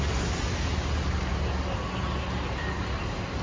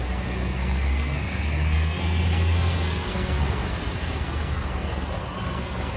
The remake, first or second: second